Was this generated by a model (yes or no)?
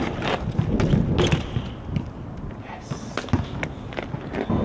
no